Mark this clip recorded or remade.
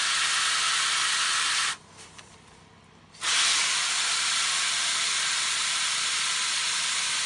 remade